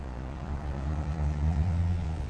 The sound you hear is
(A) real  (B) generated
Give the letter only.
B